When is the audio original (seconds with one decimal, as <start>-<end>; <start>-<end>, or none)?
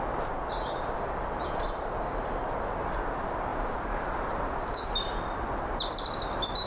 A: 0.0-3.5; 4.4-6.7